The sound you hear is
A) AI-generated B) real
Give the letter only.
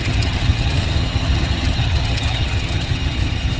A